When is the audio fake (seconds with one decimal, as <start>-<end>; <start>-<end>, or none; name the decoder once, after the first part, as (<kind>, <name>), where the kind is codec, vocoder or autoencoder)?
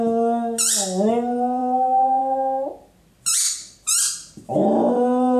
none